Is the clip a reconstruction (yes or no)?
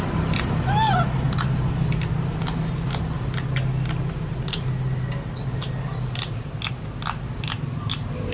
no